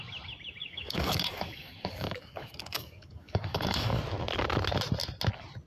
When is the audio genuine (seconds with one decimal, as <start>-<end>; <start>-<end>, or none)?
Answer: 0.0-0.6; 4.0-5.7